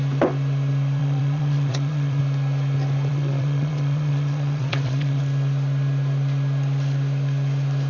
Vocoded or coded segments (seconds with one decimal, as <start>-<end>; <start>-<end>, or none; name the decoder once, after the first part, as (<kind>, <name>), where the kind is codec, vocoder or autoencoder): 1.0-2.2 (vocoder, Vocos); 3.1-5.2